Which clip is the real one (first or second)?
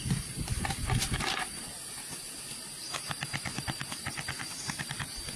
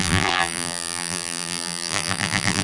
first